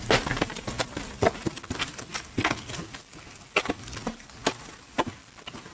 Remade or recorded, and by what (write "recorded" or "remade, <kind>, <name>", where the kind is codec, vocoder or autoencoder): recorded